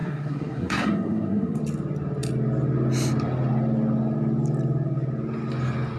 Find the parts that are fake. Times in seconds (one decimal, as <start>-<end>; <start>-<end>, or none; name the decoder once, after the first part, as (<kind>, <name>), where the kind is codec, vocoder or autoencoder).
0.0-1.6 (codec, SNAC)